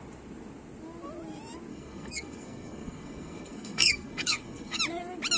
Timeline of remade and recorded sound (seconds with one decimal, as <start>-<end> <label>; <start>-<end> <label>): 0.0-1.7 recorded; 1.7-4.8 remade; 4.8-5.4 recorded